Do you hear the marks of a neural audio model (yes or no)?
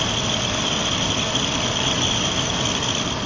no